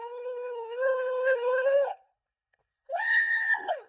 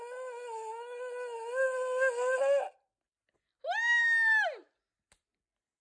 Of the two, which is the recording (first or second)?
second